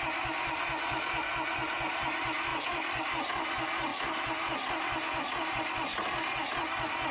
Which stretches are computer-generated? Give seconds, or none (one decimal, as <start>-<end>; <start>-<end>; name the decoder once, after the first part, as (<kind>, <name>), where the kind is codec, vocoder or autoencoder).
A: none